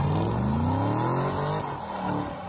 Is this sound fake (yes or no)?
no